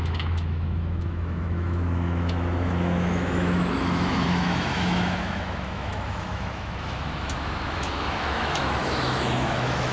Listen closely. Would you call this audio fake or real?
fake